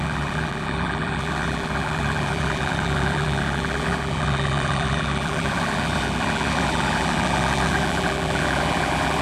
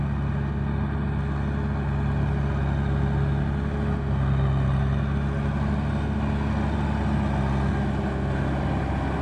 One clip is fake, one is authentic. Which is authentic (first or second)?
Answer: second